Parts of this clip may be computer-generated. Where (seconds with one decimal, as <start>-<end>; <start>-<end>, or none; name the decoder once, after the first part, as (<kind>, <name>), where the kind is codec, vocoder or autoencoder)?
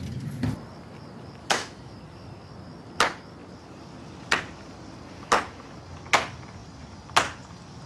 1.4-1.9 (autoencoder, DAC-VAE)